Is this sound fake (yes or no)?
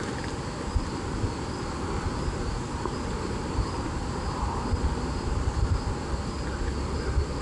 no